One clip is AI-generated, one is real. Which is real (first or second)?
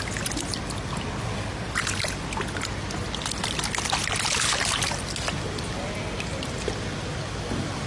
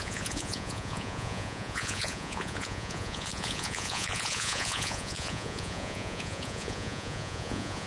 first